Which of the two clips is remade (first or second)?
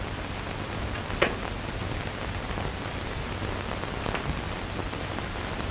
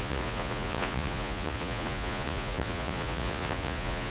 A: second